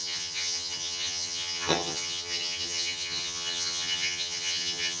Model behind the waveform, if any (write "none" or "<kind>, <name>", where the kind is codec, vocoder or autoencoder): vocoder, HiFi-GAN